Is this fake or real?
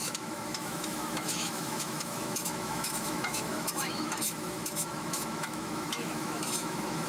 fake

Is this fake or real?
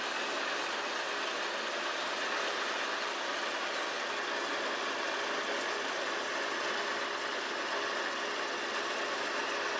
real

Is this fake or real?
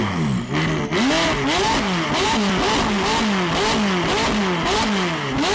real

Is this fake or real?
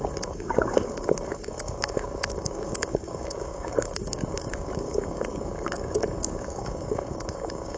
fake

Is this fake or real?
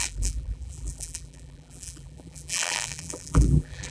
fake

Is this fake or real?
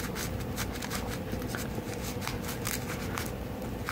real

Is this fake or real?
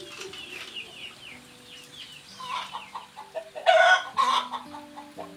real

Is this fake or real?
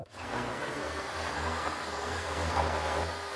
fake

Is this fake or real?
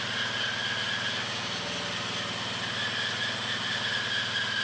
real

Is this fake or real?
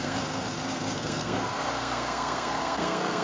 fake